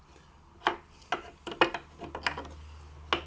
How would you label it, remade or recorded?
recorded